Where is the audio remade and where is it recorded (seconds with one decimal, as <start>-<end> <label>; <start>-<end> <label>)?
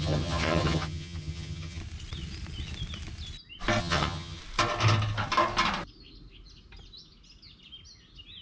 0.0-1.8 remade; 1.8-3.8 recorded; 3.8-4.4 remade; 4.4-8.4 recorded